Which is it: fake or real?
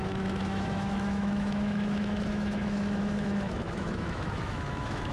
fake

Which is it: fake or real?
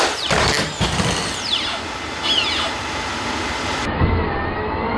real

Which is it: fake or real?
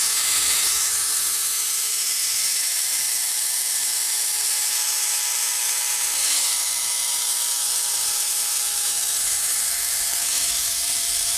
fake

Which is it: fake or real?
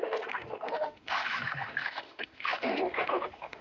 fake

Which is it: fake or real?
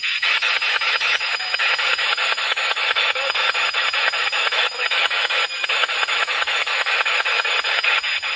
fake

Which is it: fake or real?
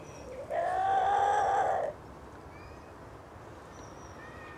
real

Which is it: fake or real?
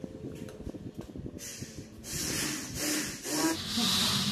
real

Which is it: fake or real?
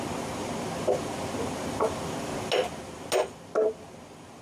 real